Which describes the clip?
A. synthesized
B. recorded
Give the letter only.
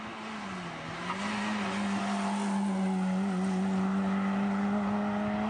B